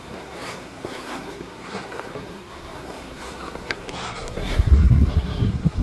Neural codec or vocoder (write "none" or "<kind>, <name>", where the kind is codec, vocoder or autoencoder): codec, SNAC